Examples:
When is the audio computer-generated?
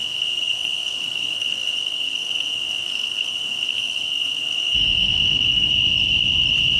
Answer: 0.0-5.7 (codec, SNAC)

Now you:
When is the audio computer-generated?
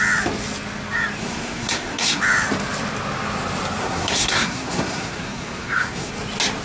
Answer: 1.2-2.2 (codec, SNAC); 3.8-6.1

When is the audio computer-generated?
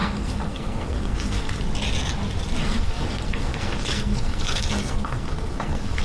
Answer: 0.0-1.6 (codec, SNAC); 2.6-6.0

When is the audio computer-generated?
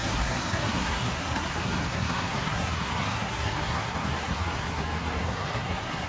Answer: 0.0-6.1 (codec, SNAC)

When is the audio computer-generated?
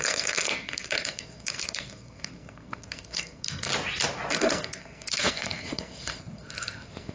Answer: 0.0-3.7 (codec, SNAC); 4.3-7.1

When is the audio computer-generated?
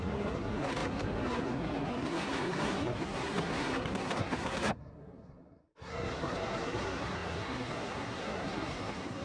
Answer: 0.0-9.2 (codec, SNAC)